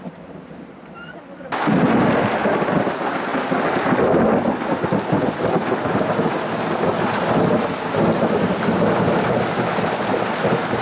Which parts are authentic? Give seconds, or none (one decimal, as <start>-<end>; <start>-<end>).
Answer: 0.0-10.8